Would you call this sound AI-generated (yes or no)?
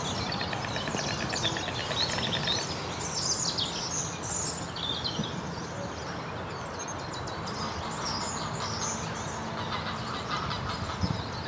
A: no